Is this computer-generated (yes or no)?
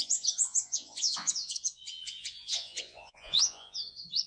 yes